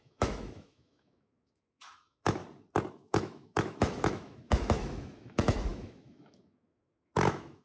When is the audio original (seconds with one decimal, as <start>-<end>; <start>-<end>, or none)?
2.4-2.9